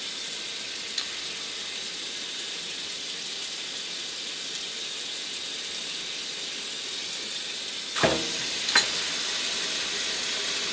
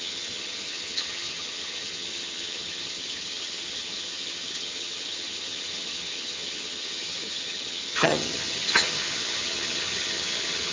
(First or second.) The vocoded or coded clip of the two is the second